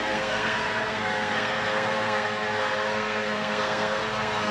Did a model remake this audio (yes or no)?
yes